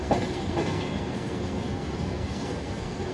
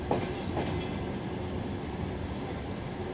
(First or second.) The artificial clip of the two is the first